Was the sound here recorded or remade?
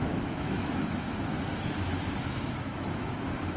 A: remade